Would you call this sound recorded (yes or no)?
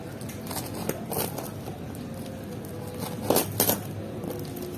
yes